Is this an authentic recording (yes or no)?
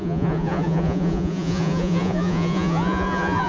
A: no